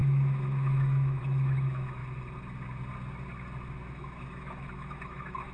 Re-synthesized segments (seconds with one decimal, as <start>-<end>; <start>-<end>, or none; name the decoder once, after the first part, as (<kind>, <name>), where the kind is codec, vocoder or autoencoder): 0.0-2.0 (autoencoder, DAC-VAE); 3.9-5.5